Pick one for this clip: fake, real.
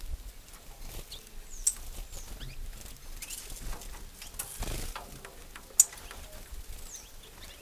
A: real